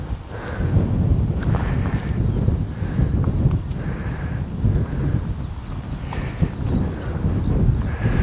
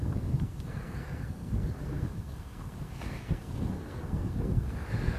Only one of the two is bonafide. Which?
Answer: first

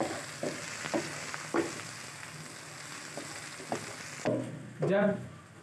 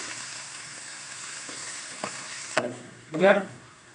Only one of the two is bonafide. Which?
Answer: first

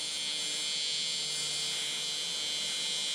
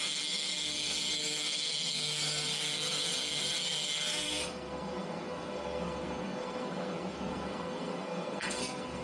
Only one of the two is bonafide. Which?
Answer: first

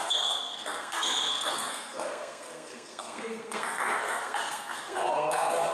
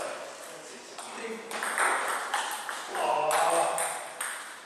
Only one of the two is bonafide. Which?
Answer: second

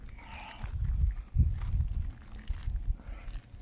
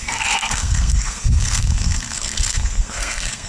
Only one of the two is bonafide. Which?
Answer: first